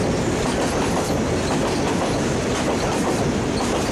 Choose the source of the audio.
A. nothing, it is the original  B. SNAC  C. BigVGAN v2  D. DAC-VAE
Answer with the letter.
A